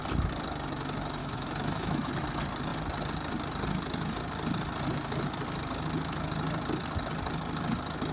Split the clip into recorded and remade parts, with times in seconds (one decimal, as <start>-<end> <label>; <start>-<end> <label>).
0.0-1.2 recorded; 1.2-2.1 remade; 2.1-8.1 recorded